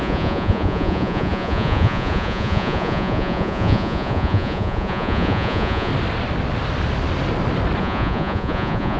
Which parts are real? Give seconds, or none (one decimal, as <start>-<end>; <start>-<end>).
5.9-7.8